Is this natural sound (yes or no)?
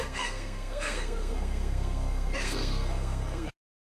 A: no